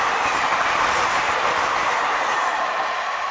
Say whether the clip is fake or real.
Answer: real